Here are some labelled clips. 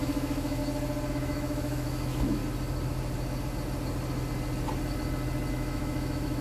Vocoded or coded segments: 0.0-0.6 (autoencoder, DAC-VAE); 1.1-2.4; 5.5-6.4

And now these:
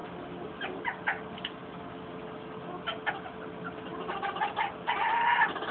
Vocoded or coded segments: none